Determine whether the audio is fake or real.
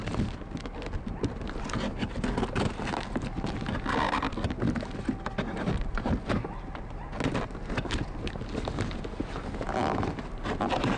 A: real